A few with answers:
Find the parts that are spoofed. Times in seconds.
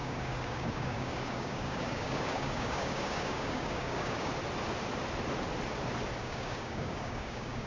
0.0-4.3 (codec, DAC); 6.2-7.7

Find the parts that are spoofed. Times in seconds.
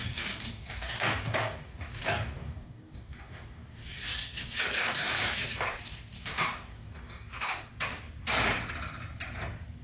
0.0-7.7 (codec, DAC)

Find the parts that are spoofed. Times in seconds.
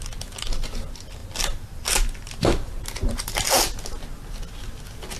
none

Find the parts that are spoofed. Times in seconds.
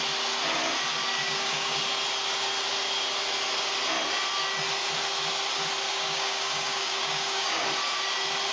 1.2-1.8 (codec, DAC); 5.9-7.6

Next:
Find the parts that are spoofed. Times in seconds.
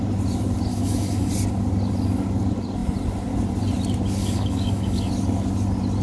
0.7-1.3 (codec, DAC); 4.2-5.1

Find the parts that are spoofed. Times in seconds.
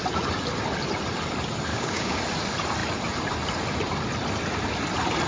1.7-2.2 (codec, DAC)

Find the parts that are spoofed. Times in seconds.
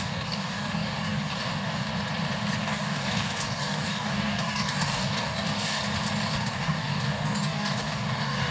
0.0-1.9 (codec, DAC); 2.6-5.8; 6.3-8.5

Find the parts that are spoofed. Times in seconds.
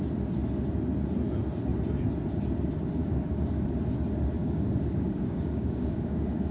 3.0-3.7 (codec, DAC); 4.4-6.5